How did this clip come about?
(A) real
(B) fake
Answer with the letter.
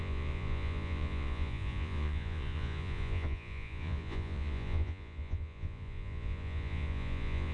B